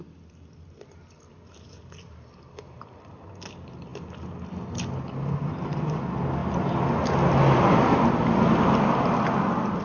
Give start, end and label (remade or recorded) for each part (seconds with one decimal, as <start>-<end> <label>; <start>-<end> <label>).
0.0-9.8 recorded

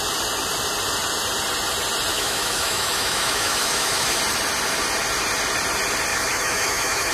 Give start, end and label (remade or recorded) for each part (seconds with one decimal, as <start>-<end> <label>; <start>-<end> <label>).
0.0-2.1 recorded; 2.1-4.2 remade; 4.2-6.1 recorded; 6.1-7.1 remade

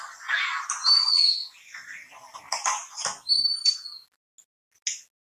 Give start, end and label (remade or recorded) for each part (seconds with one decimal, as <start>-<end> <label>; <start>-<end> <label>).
0.0-5.2 recorded

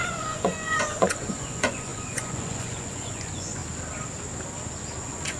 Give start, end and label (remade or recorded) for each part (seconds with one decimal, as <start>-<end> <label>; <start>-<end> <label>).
0.0-3.6 remade; 3.6-5.0 recorded; 5.0-5.4 remade

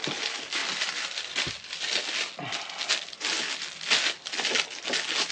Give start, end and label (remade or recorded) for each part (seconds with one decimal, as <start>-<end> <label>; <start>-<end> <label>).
0.0-0.6 recorded; 0.6-1.5 remade; 1.5-5.3 recorded

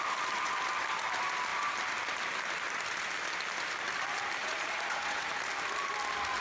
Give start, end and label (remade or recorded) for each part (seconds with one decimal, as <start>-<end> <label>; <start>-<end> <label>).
0.0-4.4 recorded; 4.4-5.3 remade; 5.3-6.4 recorded

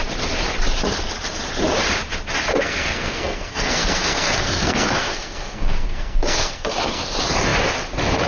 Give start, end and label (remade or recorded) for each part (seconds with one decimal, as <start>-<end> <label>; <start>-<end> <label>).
0.0-2.5 recorded; 2.5-7.0 remade; 7.0-8.3 recorded